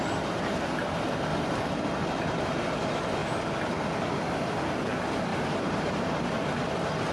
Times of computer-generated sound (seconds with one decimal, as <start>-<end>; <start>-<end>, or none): 1.3-1.8; 5.3-6.2